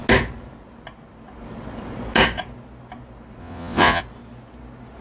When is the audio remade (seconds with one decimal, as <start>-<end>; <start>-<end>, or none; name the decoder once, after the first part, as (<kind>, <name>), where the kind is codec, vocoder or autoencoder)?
3.4-4.0 (vocoder, Vocos)